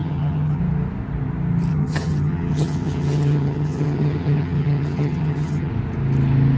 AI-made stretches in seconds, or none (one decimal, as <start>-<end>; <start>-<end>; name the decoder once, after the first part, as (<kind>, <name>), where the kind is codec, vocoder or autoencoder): 0.0-0.6 (vocoder, HiFi-GAN); 1.7-5.7